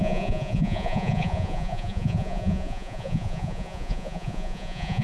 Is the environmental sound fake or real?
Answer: fake